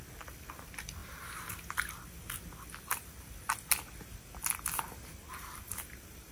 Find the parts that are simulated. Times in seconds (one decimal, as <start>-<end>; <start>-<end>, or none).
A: none